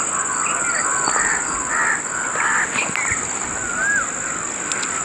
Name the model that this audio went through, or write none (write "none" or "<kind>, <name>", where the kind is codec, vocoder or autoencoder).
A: none